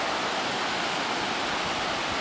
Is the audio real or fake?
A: real